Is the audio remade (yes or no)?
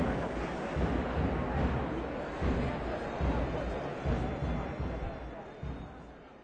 no